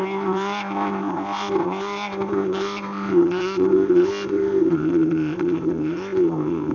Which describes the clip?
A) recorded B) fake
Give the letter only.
B